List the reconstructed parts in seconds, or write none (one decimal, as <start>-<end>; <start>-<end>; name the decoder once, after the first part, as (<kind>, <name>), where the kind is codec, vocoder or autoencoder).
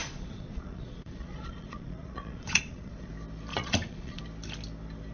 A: 0.0-3.1 (vocoder, Vocos); 3.5-4.2